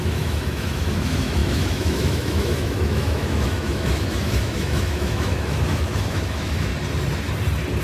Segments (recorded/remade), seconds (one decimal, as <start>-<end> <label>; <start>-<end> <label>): 0.0-6.7 remade; 6.7-7.8 recorded